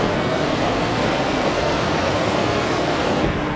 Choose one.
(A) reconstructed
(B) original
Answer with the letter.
A